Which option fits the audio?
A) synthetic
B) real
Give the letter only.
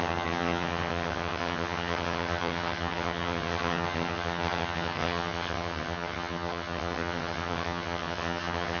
A